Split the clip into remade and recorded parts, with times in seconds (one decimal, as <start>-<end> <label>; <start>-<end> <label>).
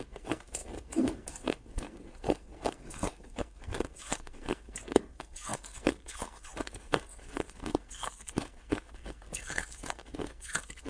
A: 0.0-10.9 remade